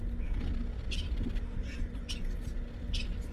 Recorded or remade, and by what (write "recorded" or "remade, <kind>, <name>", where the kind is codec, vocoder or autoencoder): recorded